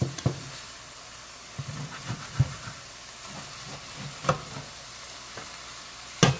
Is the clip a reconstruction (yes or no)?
no